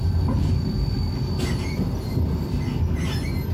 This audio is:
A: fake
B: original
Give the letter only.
B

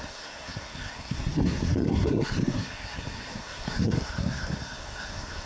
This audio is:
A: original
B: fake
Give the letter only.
B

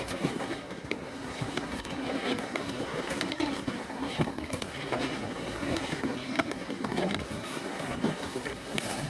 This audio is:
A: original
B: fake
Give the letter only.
B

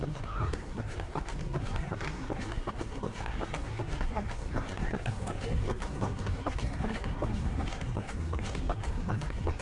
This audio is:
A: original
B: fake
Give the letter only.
B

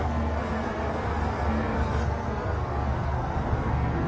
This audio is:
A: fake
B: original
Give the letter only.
A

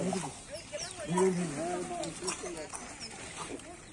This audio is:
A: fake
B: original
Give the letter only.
B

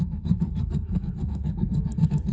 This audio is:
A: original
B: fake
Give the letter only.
B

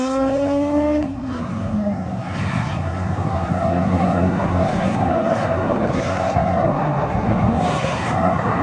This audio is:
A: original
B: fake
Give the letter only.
B